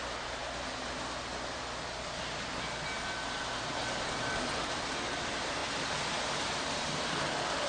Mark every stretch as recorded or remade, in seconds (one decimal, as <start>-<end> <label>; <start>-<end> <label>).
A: 0.0-7.7 recorded

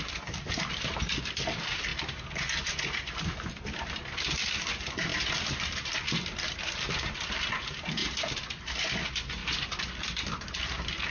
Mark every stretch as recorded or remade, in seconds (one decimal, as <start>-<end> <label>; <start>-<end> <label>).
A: 0.0-1.9 remade; 1.9-2.6 recorded; 2.6-9.4 remade; 9.4-10.5 recorded; 10.5-11.1 remade

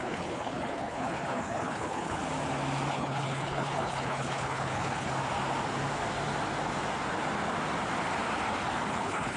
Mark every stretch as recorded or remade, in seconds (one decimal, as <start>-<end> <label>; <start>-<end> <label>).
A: 0.0-2.2 remade; 2.2-2.9 recorded; 2.9-5.1 remade; 5.1-8.9 recorded; 8.9-9.4 remade